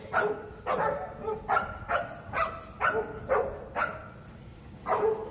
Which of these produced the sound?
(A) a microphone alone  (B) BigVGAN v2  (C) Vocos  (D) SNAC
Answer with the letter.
A